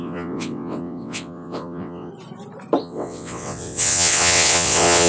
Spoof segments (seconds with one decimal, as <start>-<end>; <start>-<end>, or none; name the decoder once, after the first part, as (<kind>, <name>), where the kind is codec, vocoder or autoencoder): 0.0-2.1 (vocoder, WaveNeXt); 2.8-5.1